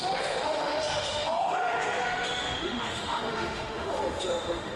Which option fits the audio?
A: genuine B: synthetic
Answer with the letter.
B